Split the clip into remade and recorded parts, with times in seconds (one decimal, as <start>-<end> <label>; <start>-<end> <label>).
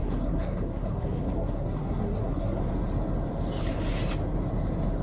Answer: 0.0-2.6 remade; 2.6-5.0 recorded